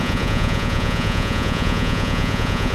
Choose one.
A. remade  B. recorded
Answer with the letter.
A